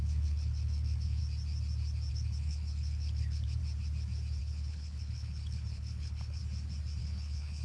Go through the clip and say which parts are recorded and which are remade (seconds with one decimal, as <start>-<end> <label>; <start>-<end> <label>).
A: 0.0-1.2 remade; 1.2-2.1 recorded; 2.1-3.6 remade; 3.6-4.4 recorded; 4.4-6.4 remade; 6.4-7.0 recorded; 7.0-7.6 remade

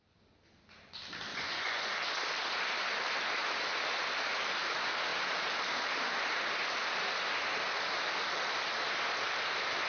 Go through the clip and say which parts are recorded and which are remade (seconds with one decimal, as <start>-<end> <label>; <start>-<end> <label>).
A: 0.0-1.3 recorded; 1.3-1.9 remade; 1.9-9.9 recorded

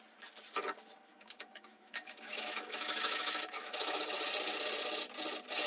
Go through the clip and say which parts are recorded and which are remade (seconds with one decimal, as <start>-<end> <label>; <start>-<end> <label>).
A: 0.0-1.1 recorded; 1.1-4.0 remade; 4.0-5.7 recorded

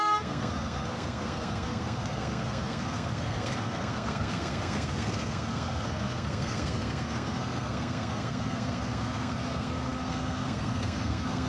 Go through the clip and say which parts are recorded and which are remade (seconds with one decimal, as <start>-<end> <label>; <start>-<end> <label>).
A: 0.0-11.5 remade

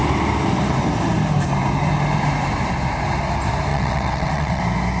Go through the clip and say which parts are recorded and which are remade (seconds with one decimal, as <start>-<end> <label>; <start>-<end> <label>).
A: 0.0-3.7 recorded; 3.7-4.6 remade; 4.6-5.0 recorded

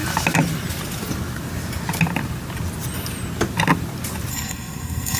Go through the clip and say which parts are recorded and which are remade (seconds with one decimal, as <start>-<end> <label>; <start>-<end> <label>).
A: 0.0-4.3 recorded; 4.3-5.2 remade